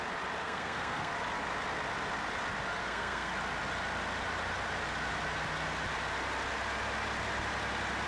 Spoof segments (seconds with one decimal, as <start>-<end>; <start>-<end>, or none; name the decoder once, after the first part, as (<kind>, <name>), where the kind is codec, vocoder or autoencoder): 0.4-1.1 (codec, SNAC); 2.8-3.3

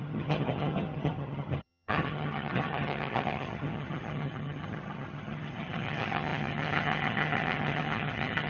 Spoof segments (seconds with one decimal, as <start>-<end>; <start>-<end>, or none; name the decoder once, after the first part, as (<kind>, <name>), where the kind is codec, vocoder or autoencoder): 0.0-8.5 (vocoder, HiFi-GAN)

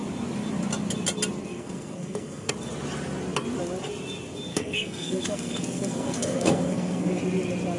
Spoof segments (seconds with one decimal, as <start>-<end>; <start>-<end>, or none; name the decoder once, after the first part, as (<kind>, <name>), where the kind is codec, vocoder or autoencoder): 1.4-2.5 (codec, SNAC); 4.5-7.2